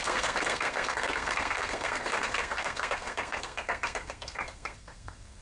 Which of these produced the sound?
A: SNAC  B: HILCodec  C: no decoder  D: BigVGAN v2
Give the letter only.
A